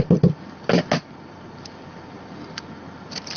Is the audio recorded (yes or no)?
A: yes